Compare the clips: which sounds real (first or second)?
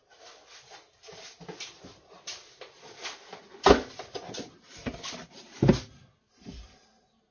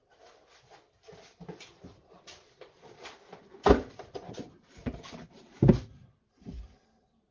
first